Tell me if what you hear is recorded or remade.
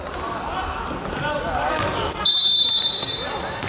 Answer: recorded